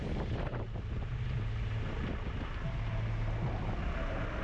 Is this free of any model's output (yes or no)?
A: yes